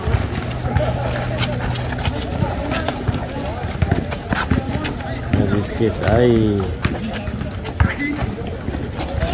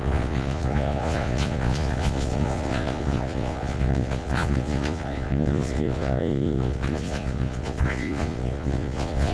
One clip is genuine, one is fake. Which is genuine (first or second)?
first